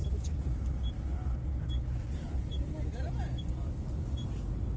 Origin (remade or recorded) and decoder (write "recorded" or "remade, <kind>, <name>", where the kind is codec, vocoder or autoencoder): recorded